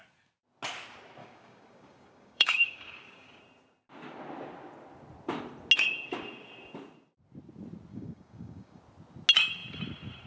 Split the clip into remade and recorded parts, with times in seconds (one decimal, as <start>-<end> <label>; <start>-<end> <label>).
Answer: 0.0-1.2 recorded; 1.2-3.4 remade; 3.4-7.9 recorded; 7.9-8.8 remade; 8.8-10.3 recorded